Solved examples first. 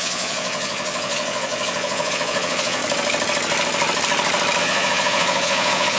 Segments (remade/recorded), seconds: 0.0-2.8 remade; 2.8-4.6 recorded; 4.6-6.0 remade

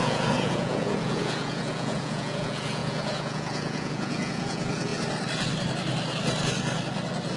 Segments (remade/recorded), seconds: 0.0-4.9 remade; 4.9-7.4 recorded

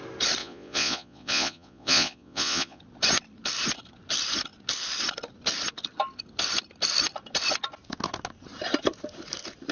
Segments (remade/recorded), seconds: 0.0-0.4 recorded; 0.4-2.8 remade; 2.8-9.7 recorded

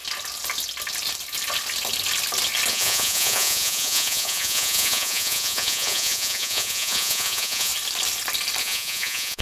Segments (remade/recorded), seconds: 0.0-2.7 recorded; 2.7-7.7 remade; 7.7-8.6 recorded; 8.6-9.4 remade

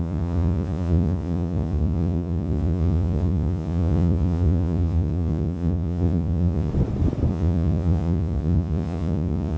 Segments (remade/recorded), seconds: 0.0-6.7 remade; 6.7-7.3 recorded; 7.3-9.6 remade

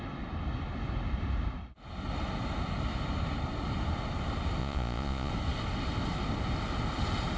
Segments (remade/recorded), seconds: 0.0-4.6 recorded; 4.6-5.3 remade; 5.3-7.4 recorded

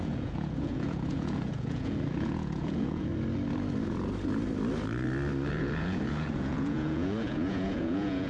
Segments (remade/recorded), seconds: 0.0-3.1 remade; 3.1-5.5 recorded; 5.5-8.3 remade

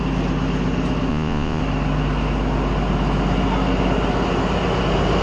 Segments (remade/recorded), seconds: 0.0-1.1 recorded; 1.1-1.6 remade; 1.6-5.2 recorded